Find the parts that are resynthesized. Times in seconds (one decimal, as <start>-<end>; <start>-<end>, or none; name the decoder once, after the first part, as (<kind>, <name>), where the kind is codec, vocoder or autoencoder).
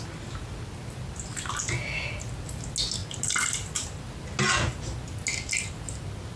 none